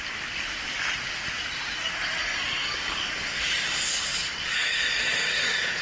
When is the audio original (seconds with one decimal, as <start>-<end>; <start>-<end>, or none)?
0.0-2.2